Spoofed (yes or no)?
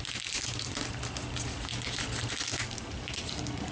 no